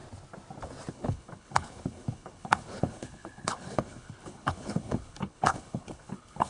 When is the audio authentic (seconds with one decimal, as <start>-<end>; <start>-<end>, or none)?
0.0-0.9